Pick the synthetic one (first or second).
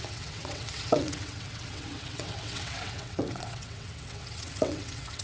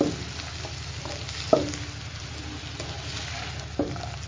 first